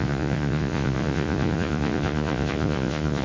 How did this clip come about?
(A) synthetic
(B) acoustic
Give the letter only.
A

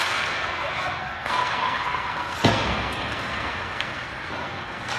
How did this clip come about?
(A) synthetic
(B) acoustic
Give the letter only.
A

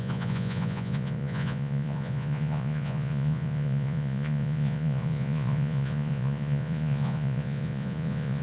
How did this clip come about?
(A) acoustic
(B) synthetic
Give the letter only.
B